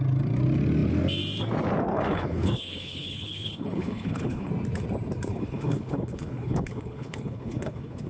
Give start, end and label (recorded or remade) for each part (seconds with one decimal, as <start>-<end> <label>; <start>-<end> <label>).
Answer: 0.0-1.9 recorded; 1.9-4.5 remade; 4.5-5.3 recorded; 5.3-8.1 remade